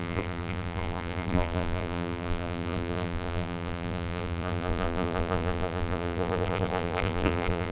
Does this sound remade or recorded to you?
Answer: remade